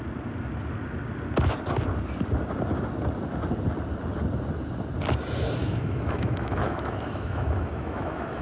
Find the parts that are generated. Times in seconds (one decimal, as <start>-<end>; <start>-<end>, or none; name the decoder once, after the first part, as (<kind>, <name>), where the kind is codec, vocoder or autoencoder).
5.6-8.4 (autoencoder, DAC-VAE)